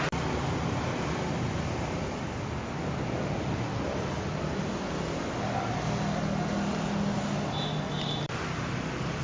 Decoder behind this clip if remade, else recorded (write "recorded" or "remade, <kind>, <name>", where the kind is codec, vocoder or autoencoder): recorded